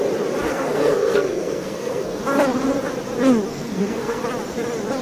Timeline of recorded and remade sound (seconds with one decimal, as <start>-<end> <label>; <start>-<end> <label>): 0.0-0.5 recorded; 0.5-2.2 remade; 2.2-3.5 recorded; 3.5-4.2 remade; 4.2-5.0 recorded